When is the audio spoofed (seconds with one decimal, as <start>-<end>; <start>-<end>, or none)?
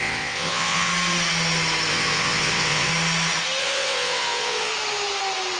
0.0-0.9; 1.9-2.9; 3.6-4.7